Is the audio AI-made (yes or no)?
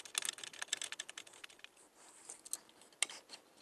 no